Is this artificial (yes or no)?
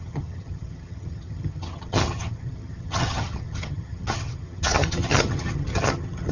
yes